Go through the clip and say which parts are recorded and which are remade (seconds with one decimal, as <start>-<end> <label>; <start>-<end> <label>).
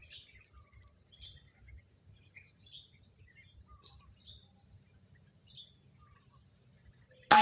0.0-7.4 recorded